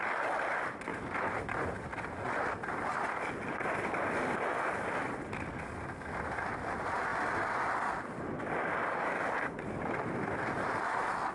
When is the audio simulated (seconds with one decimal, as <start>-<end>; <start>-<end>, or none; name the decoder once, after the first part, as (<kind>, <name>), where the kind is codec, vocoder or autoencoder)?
0.9-1.8 (vocoder, BigVGAN v2)